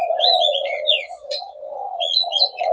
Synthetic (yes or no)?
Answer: yes